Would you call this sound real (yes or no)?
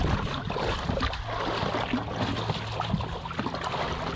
yes